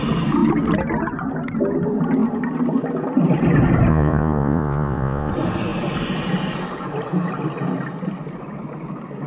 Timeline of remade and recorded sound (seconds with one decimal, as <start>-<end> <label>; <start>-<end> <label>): 0.0-3.9 recorded; 3.9-5.3 remade; 5.3-9.3 recorded